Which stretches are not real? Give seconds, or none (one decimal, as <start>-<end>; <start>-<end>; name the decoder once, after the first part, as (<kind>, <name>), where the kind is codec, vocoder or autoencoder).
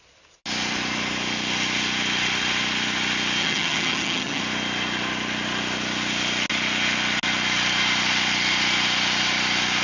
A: 3.4-4.4 (vocoder, HiFi-GAN)